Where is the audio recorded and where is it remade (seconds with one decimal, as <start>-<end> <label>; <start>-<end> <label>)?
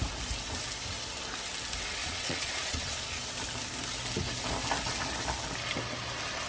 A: 0.0-2.0 recorded; 2.0-3.2 remade; 3.2-6.5 recorded